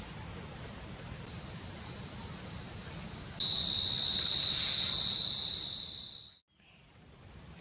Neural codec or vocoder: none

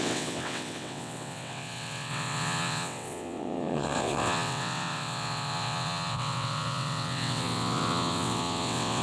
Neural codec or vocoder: vocoder, WaveNeXt